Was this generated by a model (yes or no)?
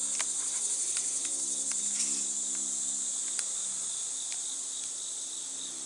no